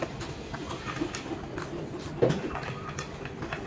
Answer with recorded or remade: recorded